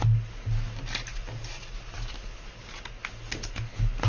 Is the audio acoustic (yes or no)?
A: yes